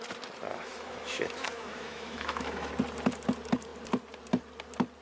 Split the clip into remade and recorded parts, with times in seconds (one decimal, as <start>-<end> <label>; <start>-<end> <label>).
0.0-0.5 recorded; 0.5-2.7 remade; 2.7-5.0 recorded